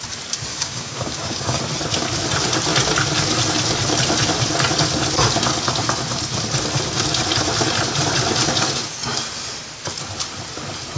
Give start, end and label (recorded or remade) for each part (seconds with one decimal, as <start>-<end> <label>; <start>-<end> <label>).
0.0-0.5 recorded; 0.5-1.6 remade; 1.6-11.0 recorded